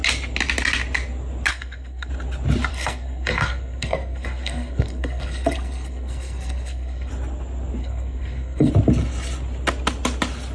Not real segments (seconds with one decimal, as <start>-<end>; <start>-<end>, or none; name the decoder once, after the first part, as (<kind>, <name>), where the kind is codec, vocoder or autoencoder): 1.5-2.1 (codec, SNAC); 2.7-7.1; 7.8-8.7